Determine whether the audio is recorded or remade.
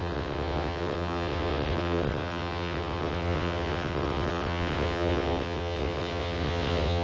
remade